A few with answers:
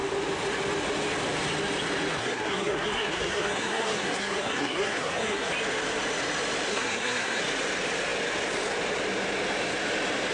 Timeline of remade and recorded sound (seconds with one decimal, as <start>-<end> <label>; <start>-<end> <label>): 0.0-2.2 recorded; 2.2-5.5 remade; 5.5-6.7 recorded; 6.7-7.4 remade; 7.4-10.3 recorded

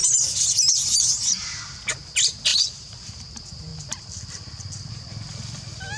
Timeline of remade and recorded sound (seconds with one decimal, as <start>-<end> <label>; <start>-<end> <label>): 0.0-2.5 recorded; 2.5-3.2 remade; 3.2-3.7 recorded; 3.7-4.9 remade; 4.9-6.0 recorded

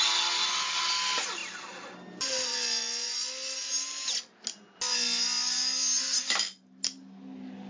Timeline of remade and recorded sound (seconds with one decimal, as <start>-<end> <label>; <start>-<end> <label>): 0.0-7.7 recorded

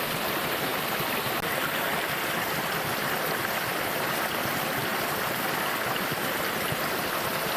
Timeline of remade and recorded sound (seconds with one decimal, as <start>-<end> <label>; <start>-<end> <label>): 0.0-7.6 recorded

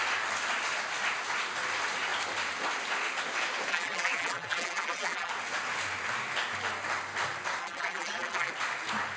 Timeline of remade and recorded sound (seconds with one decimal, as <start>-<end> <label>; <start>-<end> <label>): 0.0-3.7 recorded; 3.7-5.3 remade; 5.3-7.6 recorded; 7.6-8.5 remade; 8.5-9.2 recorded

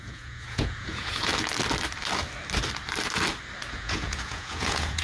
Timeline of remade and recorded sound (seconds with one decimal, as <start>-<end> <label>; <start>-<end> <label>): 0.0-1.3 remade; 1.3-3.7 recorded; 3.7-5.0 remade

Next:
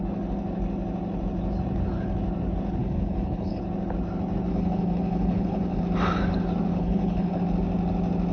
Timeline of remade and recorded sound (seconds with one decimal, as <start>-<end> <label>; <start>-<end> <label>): 0.0-2.8 recorded; 2.8-3.6 remade; 3.6-4.5 recorded; 4.5-5.8 remade; 5.8-6.7 recorded; 6.7-7.4 remade; 7.4-8.3 recorded

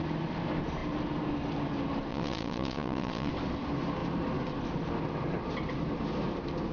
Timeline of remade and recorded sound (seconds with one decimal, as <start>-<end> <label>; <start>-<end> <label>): 0.0-2.1 recorded; 2.1-3.3 remade; 3.3-6.7 recorded